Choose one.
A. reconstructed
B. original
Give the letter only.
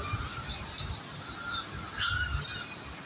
B